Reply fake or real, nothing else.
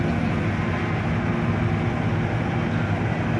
real